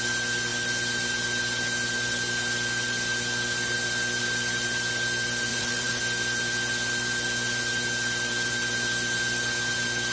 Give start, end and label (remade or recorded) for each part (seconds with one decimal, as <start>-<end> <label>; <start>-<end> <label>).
0.0-5.5 recorded; 5.5-6.0 remade; 6.0-10.1 recorded